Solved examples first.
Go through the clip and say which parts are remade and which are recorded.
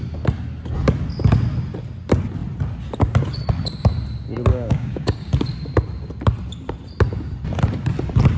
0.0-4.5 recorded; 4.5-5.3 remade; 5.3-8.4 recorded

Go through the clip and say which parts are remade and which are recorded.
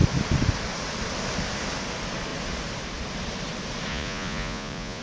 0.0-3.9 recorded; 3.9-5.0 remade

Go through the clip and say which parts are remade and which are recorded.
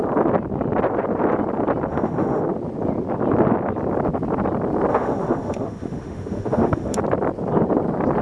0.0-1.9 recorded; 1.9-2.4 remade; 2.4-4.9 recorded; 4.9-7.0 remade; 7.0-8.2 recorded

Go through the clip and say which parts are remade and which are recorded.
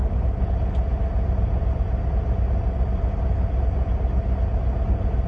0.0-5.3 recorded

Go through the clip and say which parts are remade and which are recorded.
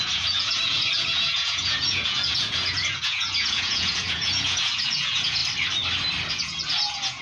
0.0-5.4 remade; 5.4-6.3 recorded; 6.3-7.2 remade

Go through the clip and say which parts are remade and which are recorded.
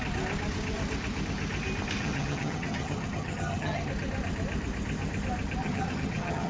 0.0-2.0 recorded; 2.0-3.9 remade; 3.9-5.6 recorded; 5.6-6.5 remade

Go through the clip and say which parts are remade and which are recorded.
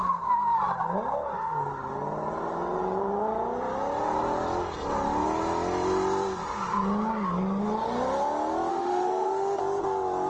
0.0-8.7 recorded; 8.7-9.6 remade; 9.6-10.3 recorded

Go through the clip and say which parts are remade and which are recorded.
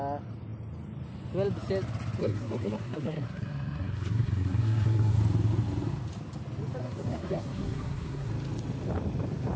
0.0-2.2 recorded; 2.2-5.2 remade; 5.2-6.8 recorded; 6.8-8.3 remade; 8.3-9.6 recorded